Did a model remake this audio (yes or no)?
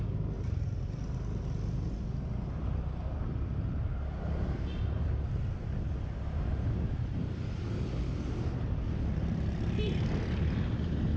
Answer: no